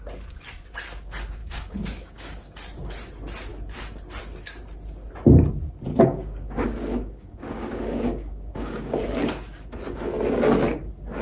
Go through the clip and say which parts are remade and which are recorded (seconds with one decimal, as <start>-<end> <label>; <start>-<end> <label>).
0.0-1.4 recorded; 1.4-2.6 remade; 2.6-5.9 recorded; 5.9-9.0 remade; 9.0-11.2 recorded